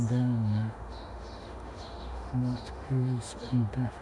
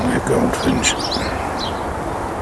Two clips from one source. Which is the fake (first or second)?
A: first